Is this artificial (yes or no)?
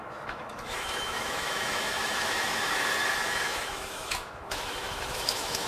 yes